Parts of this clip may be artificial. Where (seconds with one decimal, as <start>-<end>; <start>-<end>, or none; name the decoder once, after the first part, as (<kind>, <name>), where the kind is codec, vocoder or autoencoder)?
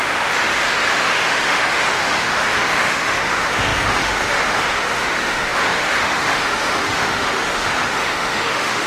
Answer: 0.0-8.9 (autoencoder, DAC-VAE)